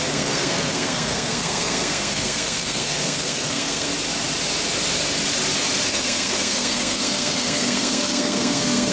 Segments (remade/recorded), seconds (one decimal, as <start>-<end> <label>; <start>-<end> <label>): 0.0-3.9 remade; 3.9-5.9 recorded; 5.9-8.9 remade